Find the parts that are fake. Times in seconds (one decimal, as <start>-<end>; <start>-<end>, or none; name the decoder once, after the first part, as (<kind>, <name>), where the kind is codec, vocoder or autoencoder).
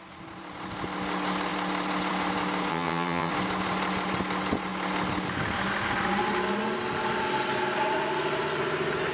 2.7-3.3 (vocoder, HiFi-GAN)